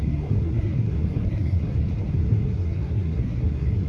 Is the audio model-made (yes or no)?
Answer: yes